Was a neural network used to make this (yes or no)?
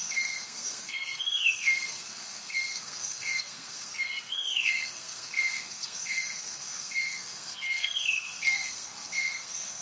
yes